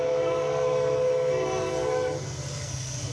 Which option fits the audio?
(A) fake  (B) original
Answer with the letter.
A